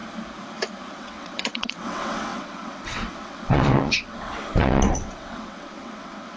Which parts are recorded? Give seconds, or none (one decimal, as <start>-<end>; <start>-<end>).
0.0-0.9